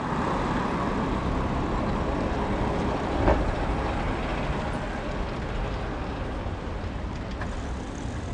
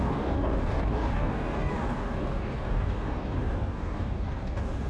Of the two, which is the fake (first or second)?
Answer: second